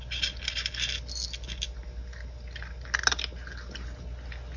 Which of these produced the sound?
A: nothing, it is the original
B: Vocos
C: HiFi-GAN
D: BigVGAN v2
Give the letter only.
A